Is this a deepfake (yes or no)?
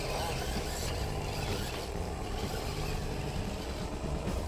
no